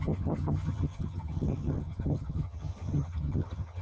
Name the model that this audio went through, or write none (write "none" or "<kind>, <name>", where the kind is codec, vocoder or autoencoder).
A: vocoder, HiFi-GAN